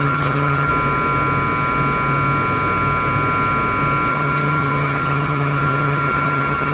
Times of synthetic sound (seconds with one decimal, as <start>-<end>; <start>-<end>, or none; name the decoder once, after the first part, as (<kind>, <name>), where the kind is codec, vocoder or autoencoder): 0.0-0.7 (vocoder, HiFi-GAN); 4.1-6.7